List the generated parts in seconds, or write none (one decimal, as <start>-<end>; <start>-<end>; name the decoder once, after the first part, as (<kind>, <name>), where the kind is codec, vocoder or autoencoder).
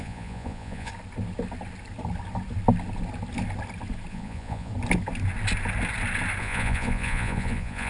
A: 0.0-0.9 (vocoder, Vocos); 4.1-4.7; 6.4-7.9